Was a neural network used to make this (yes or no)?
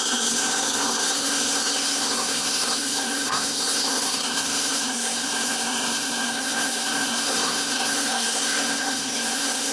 yes